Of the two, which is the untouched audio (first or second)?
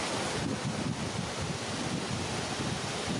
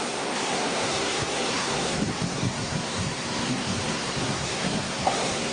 first